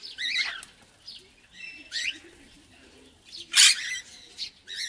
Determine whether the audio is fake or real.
real